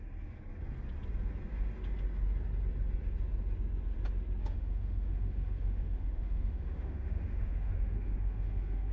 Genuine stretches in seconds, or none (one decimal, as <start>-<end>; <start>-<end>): 0.0-4.4